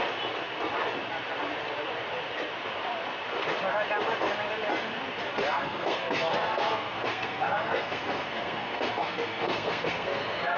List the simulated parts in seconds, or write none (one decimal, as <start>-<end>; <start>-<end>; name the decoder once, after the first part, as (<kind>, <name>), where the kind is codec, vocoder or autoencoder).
5.5-10.6 (codec, SNAC)